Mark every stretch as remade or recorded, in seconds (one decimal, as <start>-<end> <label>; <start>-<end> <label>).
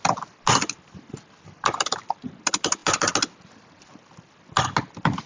0.0-5.3 recorded